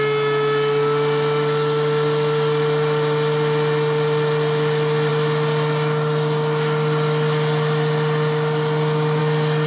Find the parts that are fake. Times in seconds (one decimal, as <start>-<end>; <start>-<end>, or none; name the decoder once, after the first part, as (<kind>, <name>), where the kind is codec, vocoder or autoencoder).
none